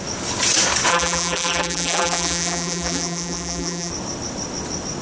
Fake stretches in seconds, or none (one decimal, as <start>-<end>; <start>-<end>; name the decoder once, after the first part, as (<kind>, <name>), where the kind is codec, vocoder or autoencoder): 0.9-3.9 (vocoder, BigVGAN v2)